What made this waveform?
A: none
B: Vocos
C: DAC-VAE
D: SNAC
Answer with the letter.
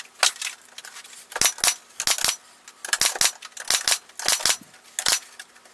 A